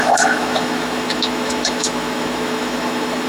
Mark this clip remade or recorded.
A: remade